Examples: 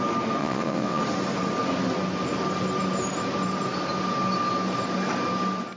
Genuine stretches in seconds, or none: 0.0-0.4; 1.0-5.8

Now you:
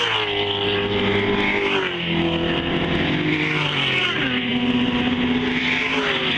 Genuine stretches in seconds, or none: 0.0-6.4